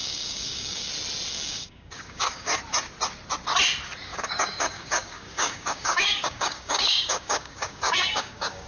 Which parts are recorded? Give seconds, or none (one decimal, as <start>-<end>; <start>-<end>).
0.9-1.3; 2.6-4.1